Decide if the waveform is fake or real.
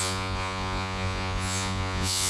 fake